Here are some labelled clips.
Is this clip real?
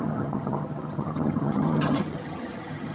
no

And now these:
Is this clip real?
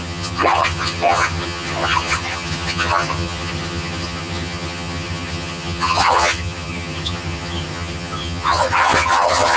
no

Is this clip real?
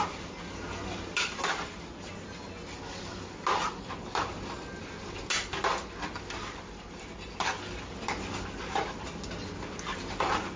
yes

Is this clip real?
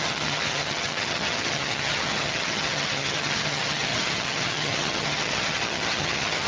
no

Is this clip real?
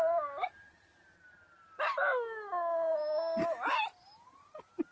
yes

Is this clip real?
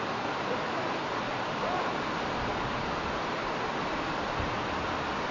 yes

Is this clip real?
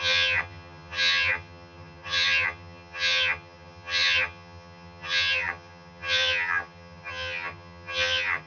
no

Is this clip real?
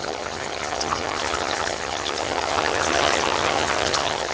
no